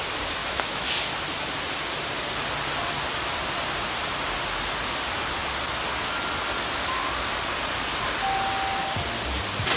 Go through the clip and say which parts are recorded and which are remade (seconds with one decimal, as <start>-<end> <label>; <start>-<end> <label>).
0.0-0.4 recorded; 0.4-0.9 remade; 0.9-9.8 recorded